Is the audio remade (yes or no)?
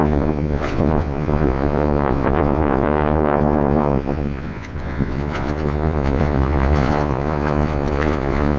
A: yes